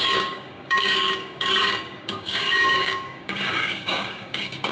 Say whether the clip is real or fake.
fake